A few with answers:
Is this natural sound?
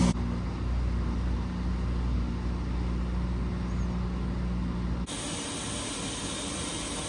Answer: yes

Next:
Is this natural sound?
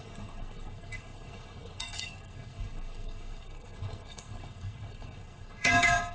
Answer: no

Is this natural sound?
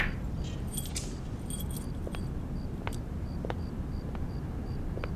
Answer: yes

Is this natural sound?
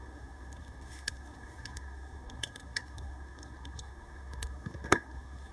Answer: no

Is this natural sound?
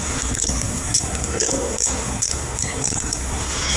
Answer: no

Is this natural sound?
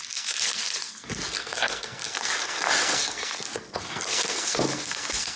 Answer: no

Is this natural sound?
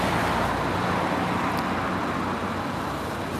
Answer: yes